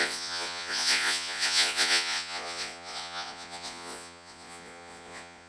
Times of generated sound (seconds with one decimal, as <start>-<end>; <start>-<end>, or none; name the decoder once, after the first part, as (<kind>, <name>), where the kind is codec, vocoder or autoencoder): 0.0-5.5 (vocoder, Vocos)